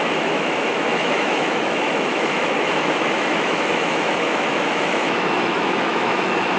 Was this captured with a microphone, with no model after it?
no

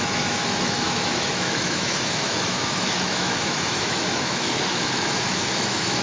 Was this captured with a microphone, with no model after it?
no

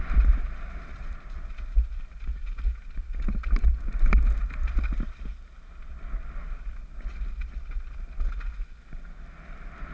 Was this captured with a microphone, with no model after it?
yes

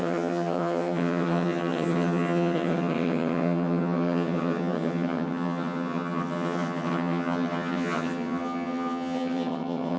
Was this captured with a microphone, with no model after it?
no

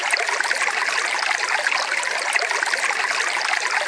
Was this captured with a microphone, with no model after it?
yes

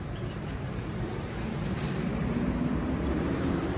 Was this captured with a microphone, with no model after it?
no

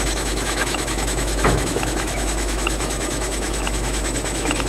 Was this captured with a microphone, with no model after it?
no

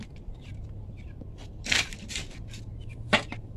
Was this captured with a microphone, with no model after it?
no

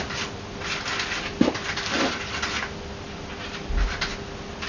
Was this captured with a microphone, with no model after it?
yes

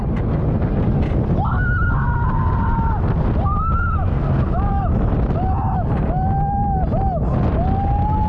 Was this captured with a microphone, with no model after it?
yes